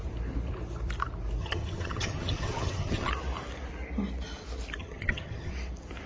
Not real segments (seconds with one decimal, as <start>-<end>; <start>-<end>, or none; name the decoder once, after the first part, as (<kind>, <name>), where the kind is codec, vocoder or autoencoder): 1.4-3.1 (vocoder, HiFi-GAN); 4.8-5.5